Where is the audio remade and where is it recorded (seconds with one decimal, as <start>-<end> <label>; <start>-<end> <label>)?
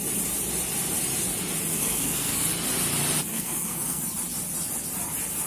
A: 0.0-1.7 recorded; 1.7-2.4 remade; 2.4-3.3 recorded; 3.3-4.0 remade; 4.0-5.5 recorded